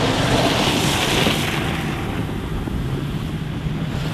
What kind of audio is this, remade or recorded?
recorded